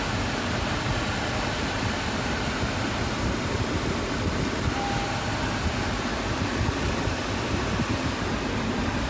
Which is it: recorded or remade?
recorded